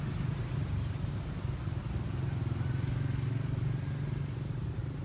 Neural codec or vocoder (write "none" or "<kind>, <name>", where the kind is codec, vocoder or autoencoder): none